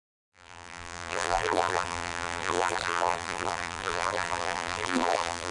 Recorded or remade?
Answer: remade